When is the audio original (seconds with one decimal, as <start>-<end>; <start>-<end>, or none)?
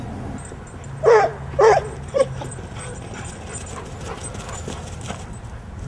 0.0-5.9